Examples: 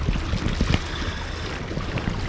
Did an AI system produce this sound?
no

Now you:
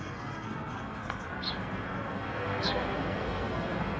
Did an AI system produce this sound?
yes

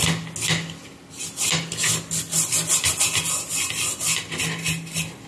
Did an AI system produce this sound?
no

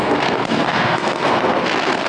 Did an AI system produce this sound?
yes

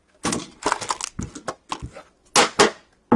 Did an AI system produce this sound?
no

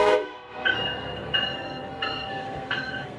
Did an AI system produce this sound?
yes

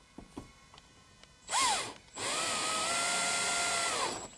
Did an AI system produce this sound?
no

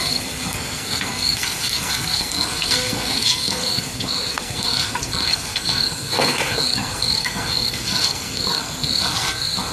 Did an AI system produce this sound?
yes